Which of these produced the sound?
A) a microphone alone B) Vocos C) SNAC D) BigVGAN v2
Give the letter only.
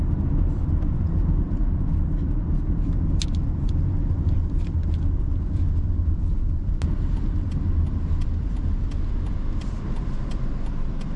A